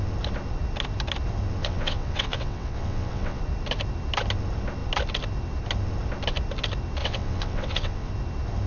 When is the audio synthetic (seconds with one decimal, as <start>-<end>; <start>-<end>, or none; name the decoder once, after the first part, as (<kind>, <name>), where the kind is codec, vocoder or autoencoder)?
1.6-3.4 (vocoder, WaveNeXt); 7.0-8.1